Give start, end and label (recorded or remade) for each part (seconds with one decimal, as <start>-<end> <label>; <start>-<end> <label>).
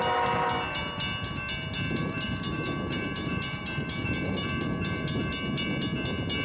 0.0-2.0 recorded; 2.0-5.3 remade; 5.3-6.4 recorded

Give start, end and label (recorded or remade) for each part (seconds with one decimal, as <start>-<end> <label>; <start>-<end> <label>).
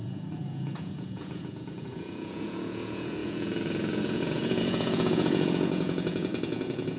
0.0-7.0 remade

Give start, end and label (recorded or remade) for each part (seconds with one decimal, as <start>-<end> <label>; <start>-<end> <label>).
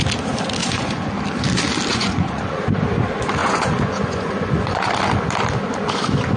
0.0-0.6 recorded; 0.6-1.1 remade; 1.1-1.9 recorded; 1.9-2.6 remade; 2.6-3.4 recorded; 3.4-4.9 remade; 4.9-6.4 recorded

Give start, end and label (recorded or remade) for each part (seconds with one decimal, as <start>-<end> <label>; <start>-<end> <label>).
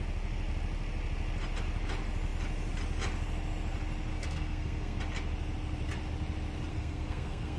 0.0-4.1 recorded; 4.1-5.0 remade; 5.0-6.7 recorded; 6.7-7.6 remade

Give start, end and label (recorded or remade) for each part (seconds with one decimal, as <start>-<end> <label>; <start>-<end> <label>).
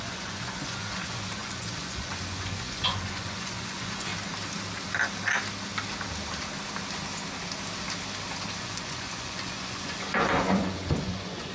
0.0-4.1 remade; 4.1-8.6 recorded; 8.6-11.5 remade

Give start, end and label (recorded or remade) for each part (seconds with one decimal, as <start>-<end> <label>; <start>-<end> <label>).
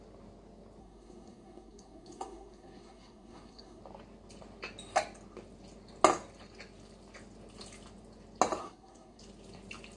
0.0-0.8 recorded; 0.8-3.8 remade; 3.8-8.6 recorded; 8.6-9.2 remade; 9.2-10.0 recorded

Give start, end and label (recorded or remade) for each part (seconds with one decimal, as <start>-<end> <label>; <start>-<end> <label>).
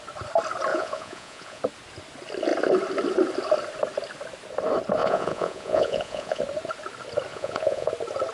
0.0-0.7 recorded; 0.7-1.6 remade; 1.6-5.0 recorded; 5.0-6.4 remade; 6.4-7.3 recorded; 7.3-7.9 remade; 7.9-8.3 recorded